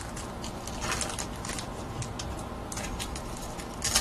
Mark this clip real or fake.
real